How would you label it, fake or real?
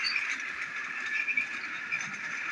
fake